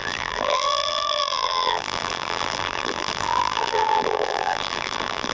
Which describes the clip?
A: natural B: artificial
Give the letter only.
B